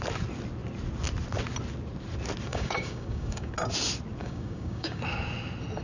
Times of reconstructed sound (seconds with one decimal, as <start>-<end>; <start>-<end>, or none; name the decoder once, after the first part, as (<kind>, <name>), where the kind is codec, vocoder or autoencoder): 2.5-3.5 (codec, DAC); 4.2-5.0